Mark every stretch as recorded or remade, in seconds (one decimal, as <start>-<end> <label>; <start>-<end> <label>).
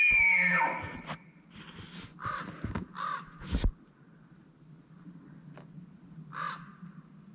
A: 0.0-7.3 recorded